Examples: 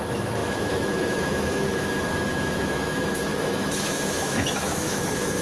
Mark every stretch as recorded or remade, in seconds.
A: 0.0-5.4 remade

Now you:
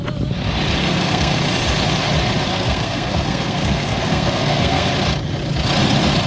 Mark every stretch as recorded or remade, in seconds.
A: 0.0-0.8 recorded; 0.8-1.4 remade; 1.4-2.5 recorded; 2.5-4.9 remade; 4.9-6.3 recorded

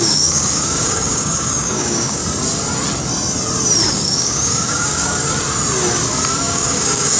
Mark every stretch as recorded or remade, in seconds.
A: 0.0-2.2 remade; 2.2-3.9 recorded; 3.9-5.2 remade; 5.2-6.4 recorded; 6.4-7.2 remade

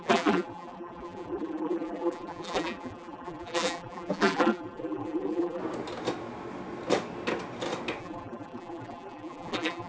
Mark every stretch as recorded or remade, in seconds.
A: 0.0-5.6 remade; 5.6-8.0 recorded; 8.0-9.9 remade

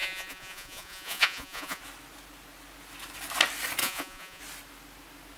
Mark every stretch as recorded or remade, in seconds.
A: 0.0-1.8 remade; 1.8-3.8 recorded; 3.8-4.4 remade; 4.4-5.4 recorded

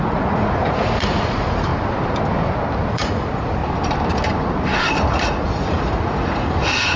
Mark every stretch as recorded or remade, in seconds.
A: 0.0-1.7 remade; 1.7-2.9 recorded; 2.9-3.6 remade; 3.6-5.1 recorded; 5.1-7.0 remade